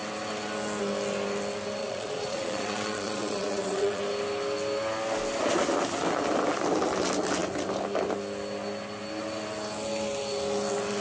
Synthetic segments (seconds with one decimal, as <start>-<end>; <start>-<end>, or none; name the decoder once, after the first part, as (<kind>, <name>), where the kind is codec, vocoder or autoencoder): 1.8-4.0 (vocoder, Vocos)